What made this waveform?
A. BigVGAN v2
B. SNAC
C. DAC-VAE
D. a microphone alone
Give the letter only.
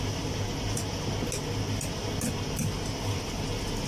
D